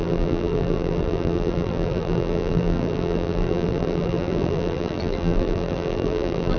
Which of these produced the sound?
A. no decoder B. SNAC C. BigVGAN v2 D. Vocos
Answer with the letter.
C